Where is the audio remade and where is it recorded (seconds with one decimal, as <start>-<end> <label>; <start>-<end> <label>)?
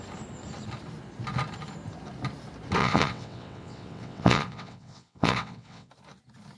0.0-2.8 recorded; 2.8-5.9 remade; 5.9-6.6 recorded